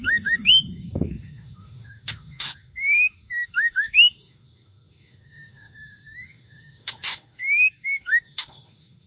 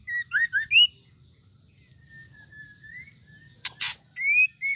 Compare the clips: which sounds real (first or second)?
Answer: second